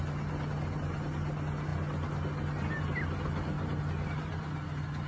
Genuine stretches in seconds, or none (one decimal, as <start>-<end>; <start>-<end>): 0.0-5.1